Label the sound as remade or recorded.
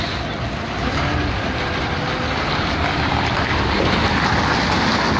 recorded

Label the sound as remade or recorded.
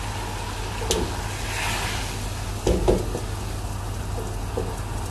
recorded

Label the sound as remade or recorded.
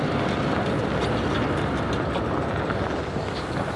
recorded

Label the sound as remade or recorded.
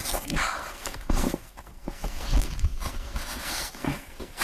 remade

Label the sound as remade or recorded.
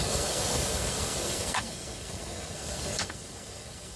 remade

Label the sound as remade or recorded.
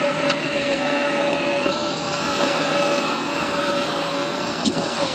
remade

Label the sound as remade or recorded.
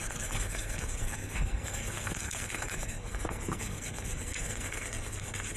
remade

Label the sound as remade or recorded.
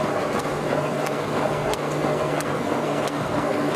remade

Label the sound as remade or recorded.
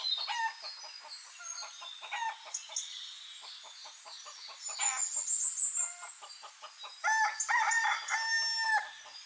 recorded